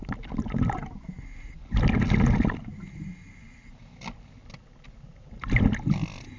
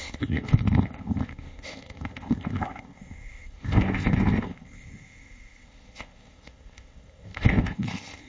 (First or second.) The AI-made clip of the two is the second